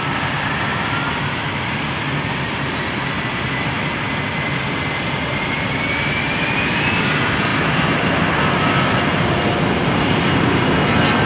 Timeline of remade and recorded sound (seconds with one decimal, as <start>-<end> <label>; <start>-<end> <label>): 0.0-11.3 recorded